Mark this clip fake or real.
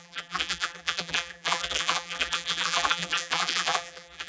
fake